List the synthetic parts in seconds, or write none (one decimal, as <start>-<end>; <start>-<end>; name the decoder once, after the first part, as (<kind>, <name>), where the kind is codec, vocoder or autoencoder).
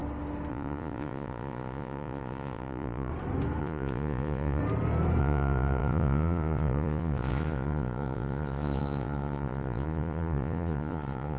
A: 0.5-3.1 (vocoder, Vocos); 3.6-4.6; 5.2-11.4